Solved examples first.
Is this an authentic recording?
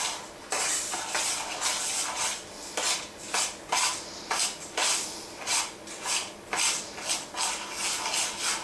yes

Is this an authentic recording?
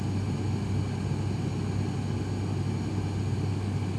yes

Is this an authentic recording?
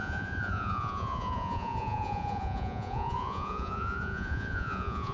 no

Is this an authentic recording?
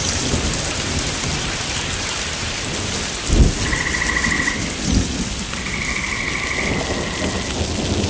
yes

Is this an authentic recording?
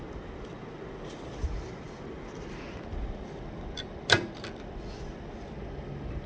yes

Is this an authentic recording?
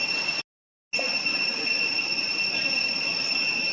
yes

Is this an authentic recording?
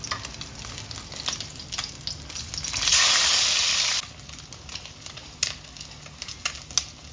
yes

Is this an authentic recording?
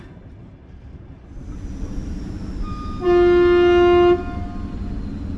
yes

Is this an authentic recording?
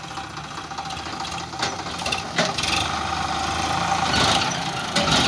yes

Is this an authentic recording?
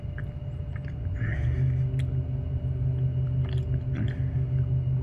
yes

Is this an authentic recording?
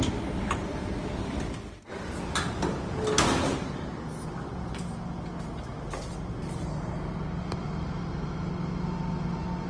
yes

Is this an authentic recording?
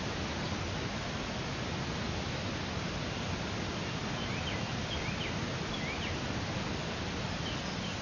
yes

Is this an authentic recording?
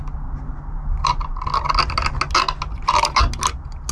yes